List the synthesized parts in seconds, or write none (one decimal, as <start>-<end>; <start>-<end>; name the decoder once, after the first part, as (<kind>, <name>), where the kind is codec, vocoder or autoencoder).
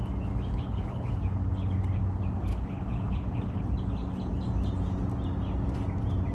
0.5-1.1 (codec, HILCodec); 2.5-3.6